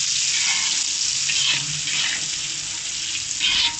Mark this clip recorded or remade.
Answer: recorded